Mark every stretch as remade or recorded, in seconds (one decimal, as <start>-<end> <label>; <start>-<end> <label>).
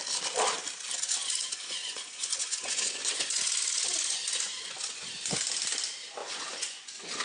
0.0-1.2 recorded; 1.2-5.4 remade; 5.4-6.2 recorded; 6.2-7.2 remade